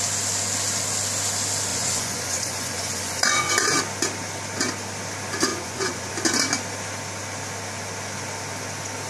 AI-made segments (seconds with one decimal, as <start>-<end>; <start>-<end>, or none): 1.7-3.5; 5.5-6.1